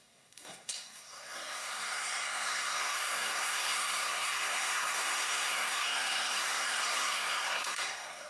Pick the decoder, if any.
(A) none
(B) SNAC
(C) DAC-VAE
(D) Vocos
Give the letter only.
B